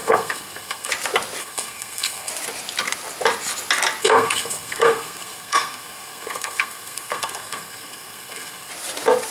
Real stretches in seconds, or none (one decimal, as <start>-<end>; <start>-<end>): 0.9-1.4; 2.3-4.0; 8.7-9.3